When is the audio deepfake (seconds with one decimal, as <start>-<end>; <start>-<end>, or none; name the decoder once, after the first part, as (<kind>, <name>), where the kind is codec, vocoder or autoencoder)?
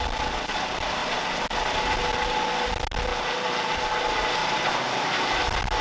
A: 3.1-3.8 (vocoder, BigVGAN v2); 4.4-5.2